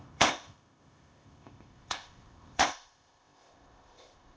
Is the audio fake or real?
fake